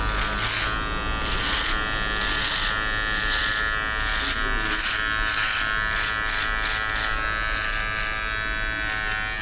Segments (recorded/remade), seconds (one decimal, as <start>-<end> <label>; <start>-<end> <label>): 0.0-9.4 recorded